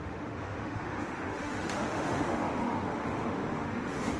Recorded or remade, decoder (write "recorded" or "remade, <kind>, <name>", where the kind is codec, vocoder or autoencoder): remade, autoencoder, DAC-VAE